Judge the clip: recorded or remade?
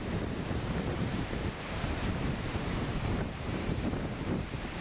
remade